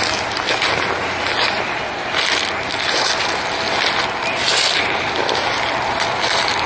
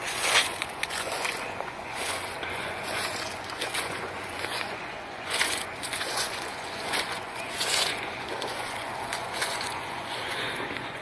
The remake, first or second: second